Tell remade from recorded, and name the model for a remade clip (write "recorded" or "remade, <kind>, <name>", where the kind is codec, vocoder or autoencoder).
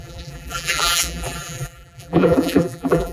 remade, vocoder, BigVGAN v2